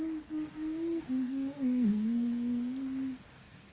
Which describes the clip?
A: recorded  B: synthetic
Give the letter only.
B